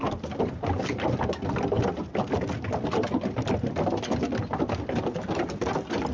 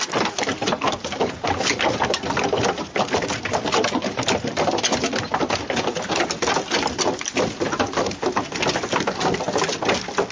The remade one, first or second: second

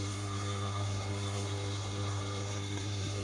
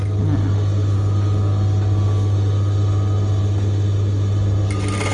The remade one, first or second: first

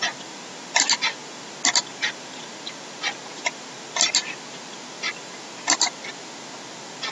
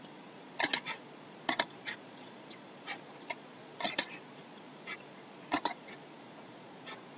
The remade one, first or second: second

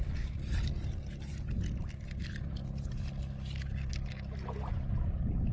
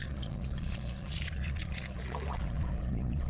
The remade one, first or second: second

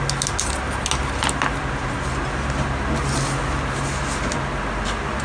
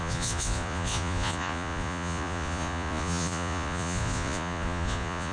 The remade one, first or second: second